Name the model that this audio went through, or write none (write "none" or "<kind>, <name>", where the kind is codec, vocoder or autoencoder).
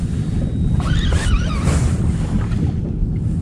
none